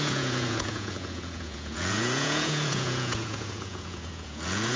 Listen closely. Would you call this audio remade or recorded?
remade